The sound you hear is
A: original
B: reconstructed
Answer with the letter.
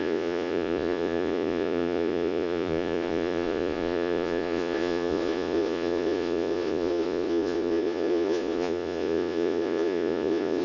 B